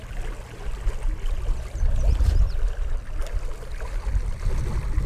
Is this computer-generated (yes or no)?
no